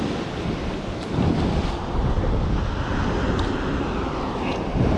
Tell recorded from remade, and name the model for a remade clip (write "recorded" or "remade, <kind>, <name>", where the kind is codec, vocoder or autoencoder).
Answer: recorded